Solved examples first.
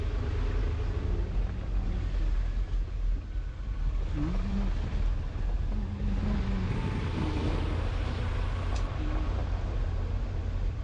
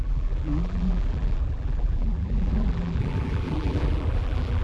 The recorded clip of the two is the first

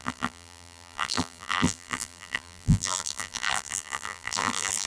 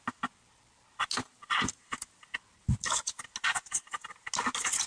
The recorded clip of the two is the second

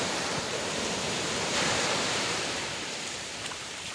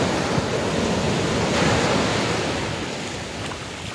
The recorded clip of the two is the second